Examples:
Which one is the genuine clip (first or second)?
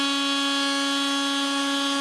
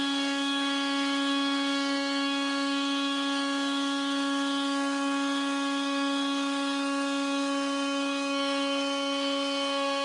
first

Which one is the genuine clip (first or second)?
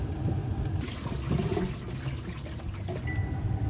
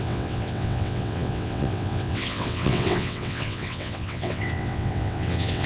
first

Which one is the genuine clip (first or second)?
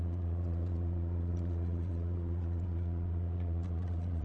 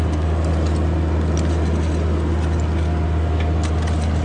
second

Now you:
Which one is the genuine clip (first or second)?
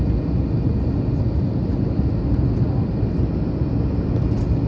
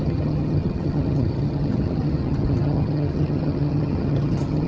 first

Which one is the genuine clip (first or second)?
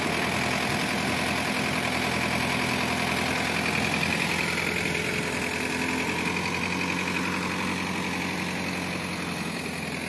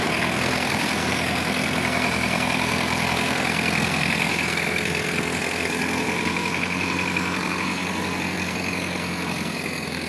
first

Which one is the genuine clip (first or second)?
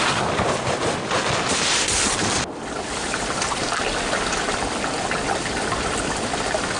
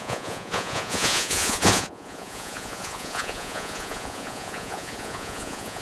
first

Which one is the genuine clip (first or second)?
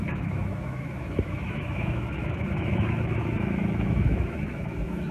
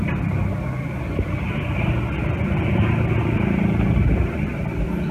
second